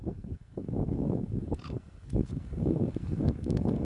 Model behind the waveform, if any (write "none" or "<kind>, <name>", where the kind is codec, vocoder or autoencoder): codec, SNAC